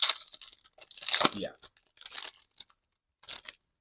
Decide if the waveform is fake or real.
real